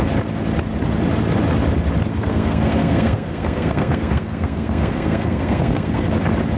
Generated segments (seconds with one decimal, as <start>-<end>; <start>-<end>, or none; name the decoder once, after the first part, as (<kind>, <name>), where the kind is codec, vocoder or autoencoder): 2.1-6.1 (codec, SNAC)